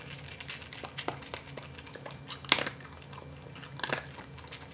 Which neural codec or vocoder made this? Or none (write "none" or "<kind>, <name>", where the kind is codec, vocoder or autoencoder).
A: none